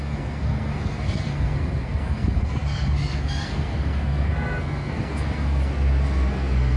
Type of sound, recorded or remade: remade